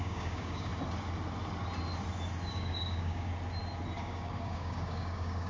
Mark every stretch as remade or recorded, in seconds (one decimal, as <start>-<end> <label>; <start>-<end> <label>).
0.0-0.7 remade; 0.7-2.5 recorded; 2.5-3.3 remade; 3.3-4.0 recorded; 4.0-5.5 remade